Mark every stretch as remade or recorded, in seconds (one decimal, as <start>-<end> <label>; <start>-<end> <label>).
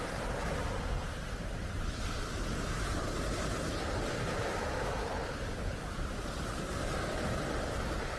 0.0-5.0 recorded; 5.0-5.8 remade; 5.8-8.2 recorded